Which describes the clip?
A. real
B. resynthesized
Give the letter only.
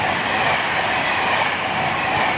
A